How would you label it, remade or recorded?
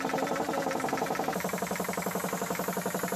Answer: recorded